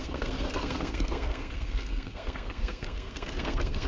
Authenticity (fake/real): fake